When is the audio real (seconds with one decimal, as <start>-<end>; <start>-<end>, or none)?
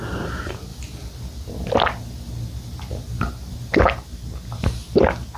0.0-5.4